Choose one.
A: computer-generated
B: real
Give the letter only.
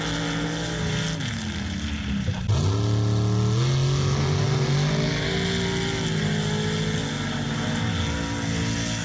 B